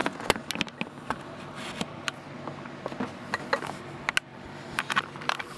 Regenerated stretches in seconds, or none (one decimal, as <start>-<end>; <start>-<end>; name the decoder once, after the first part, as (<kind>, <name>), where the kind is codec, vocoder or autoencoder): 4.3-5.0 (vocoder, BigVGAN v2)